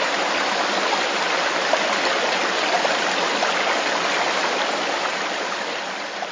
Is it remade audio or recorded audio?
recorded